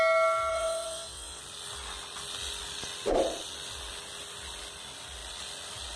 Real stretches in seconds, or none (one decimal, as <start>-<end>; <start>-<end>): 0.0-0.5; 1.4-6.0